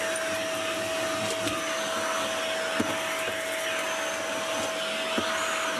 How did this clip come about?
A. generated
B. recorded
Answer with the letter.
B